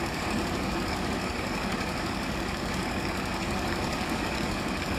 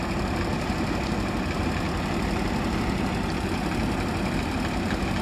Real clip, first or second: second